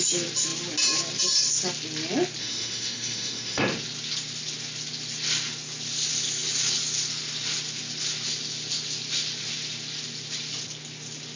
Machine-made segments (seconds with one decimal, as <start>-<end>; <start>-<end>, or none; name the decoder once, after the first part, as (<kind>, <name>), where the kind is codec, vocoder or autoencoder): 2.4-3.6 (autoencoder, DAC-VAE)